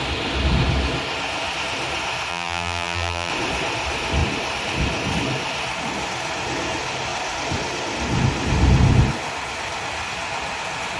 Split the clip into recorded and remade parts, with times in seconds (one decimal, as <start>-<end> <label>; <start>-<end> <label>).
0.0-2.3 recorded; 2.3-3.3 remade; 3.3-11.0 recorded